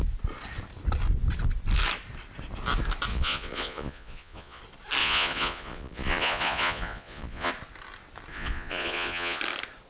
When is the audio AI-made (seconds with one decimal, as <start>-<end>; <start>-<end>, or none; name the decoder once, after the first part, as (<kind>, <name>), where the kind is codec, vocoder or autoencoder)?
3.1-4.6 (vocoder, Vocos); 5.0-7.5; 8.3-9.4